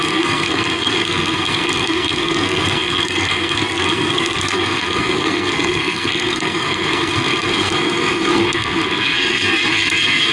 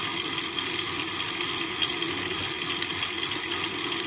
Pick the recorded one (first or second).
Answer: second